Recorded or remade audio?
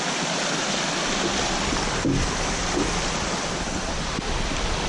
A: recorded